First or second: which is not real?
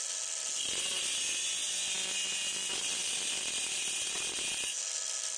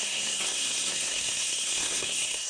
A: second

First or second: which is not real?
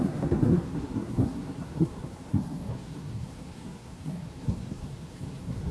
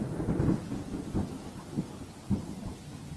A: first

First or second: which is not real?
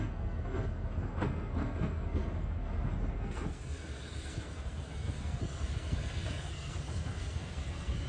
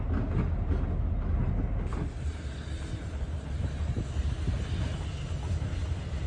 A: first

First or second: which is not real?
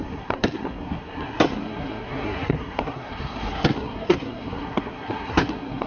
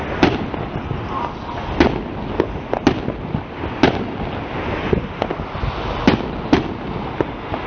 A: first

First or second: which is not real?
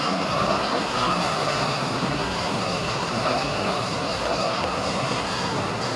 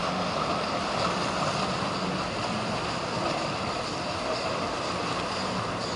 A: first